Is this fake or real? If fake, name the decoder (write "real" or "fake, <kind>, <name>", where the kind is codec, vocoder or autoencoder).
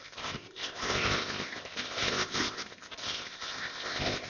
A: fake, codec, ZipCodec